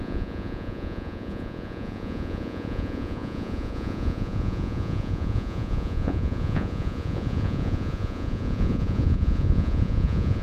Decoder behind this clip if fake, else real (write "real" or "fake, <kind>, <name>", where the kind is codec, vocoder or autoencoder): fake, vocoder, Vocos